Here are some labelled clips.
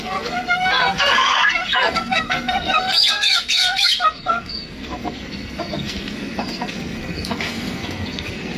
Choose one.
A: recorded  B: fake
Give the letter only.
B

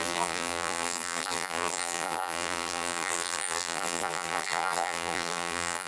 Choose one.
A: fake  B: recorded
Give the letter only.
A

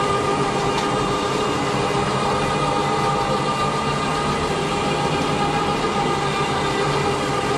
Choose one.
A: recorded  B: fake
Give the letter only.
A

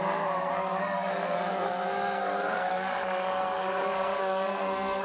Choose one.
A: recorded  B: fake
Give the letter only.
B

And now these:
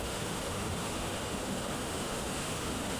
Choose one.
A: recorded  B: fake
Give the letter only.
B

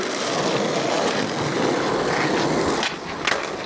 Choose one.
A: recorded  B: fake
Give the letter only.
A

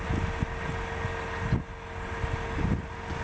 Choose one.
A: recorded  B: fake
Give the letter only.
A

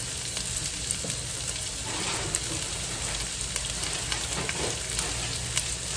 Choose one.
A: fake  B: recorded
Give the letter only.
B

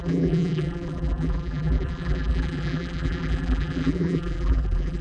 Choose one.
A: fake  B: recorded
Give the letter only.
A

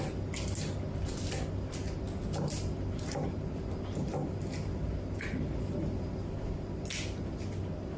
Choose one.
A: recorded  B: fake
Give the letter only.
A